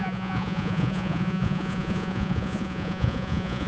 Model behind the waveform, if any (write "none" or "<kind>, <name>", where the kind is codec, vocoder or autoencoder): vocoder, Vocos